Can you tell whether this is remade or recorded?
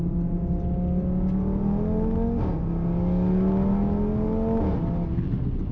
recorded